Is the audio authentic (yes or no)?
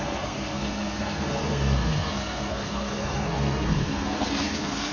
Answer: no